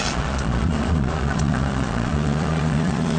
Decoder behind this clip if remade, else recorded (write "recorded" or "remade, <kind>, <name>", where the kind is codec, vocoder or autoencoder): remade, vocoder, Vocos